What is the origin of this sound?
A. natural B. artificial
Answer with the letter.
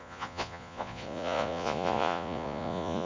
B